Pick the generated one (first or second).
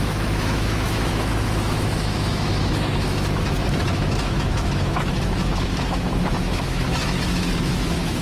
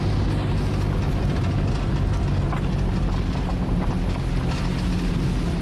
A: first